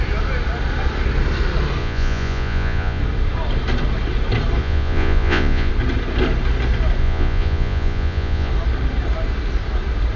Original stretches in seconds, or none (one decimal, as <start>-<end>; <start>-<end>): 0.0-1.8; 3.0-4.6; 5.7-7.0; 8.5-10.2